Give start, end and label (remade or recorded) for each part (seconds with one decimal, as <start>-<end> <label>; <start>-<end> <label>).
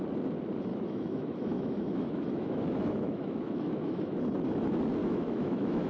0.0-0.7 recorded; 0.7-4.2 remade; 4.2-5.0 recorded; 5.0-5.9 remade